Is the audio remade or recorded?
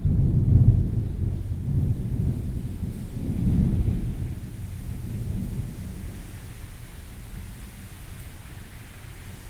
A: recorded